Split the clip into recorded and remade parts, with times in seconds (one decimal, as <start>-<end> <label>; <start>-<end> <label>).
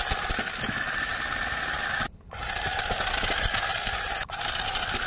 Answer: 0.0-3.7 recorded; 3.7-4.4 remade; 4.4-5.1 recorded